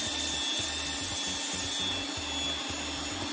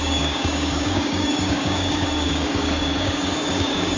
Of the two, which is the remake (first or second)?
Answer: second